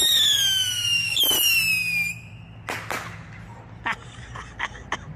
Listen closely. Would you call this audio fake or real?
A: real